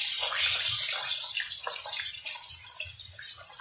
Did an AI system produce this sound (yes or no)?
no